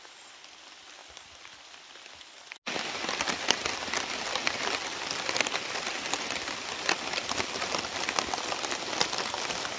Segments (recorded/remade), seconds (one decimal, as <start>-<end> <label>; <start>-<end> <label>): 0.0-1.0 recorded; 1.0-1.5 remade; 1.5-9.8 recorded